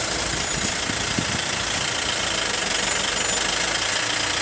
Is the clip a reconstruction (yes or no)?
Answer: no